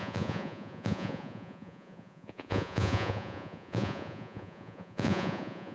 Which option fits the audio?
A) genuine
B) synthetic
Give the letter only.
B